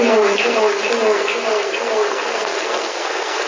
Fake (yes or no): yes